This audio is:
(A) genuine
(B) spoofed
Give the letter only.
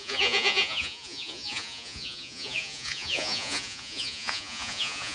B